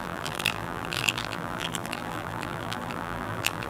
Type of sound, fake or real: fake